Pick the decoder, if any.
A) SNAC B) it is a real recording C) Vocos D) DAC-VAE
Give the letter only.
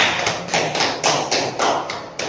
B